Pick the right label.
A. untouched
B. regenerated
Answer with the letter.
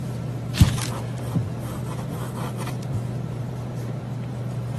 B